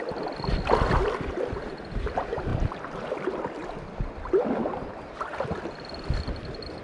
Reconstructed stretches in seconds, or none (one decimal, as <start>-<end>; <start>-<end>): none